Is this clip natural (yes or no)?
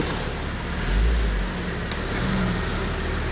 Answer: yes